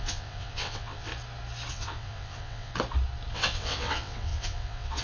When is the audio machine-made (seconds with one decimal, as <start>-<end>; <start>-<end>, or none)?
0.0-1.1; 1.7-2.7; 3.3-5.0